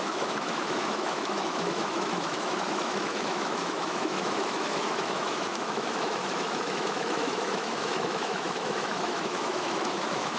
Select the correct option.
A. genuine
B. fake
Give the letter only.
B